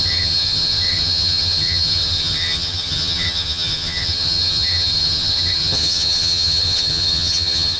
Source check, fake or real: fake